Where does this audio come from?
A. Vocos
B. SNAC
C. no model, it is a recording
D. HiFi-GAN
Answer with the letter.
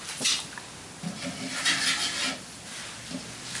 C